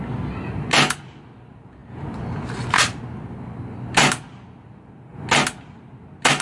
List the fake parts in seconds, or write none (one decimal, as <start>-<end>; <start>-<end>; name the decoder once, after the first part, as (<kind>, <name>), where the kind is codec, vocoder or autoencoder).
none